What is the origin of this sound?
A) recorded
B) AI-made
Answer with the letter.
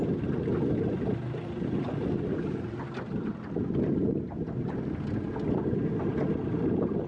A